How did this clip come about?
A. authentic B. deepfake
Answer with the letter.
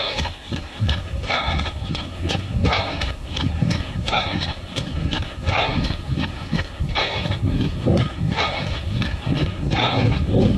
B